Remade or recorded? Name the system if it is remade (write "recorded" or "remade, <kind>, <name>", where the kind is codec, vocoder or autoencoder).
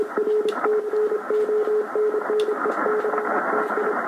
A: recorded